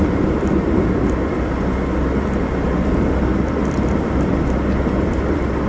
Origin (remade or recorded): remade